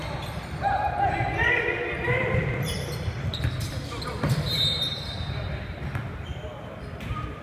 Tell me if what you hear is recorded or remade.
recorded